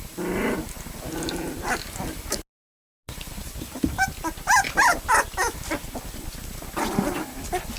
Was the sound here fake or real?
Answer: real